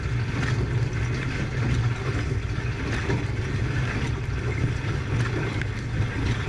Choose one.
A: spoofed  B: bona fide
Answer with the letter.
B